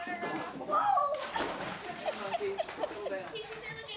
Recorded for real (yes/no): yes